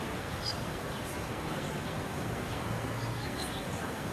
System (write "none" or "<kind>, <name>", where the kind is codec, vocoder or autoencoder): codec, SNAC